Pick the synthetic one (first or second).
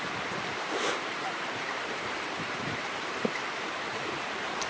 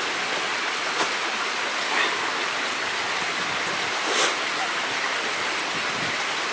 first